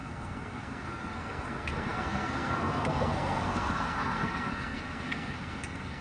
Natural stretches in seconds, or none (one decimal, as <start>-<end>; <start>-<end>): none